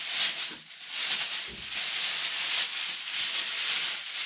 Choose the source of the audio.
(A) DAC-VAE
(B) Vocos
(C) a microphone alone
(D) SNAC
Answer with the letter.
C